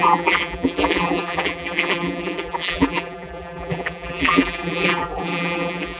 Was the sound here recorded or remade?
remade